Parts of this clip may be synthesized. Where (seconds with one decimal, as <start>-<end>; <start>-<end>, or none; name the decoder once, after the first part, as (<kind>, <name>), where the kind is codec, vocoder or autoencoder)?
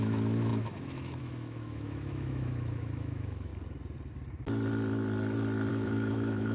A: 0.0-3.5 (autoencoder, DAC-VAE); 5.7-6.5